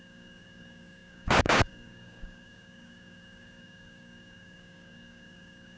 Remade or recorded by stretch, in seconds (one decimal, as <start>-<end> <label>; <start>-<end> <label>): 0.0-5.8 remade